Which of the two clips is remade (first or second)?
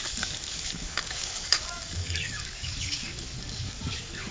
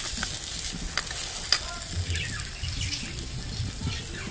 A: first